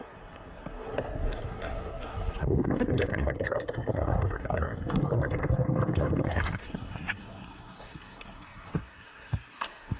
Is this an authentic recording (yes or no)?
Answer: no